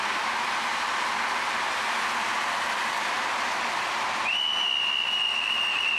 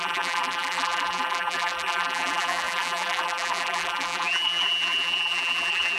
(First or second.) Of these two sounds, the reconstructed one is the second